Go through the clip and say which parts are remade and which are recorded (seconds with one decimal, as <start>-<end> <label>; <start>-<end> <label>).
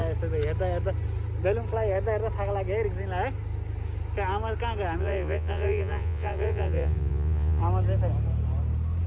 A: 0.0-5.0 recorded; 5.0-7.6 remade; 7.6-9.1 recorded